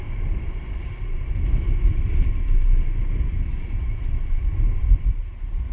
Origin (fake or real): fake